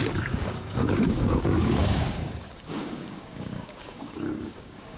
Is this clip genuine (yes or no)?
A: no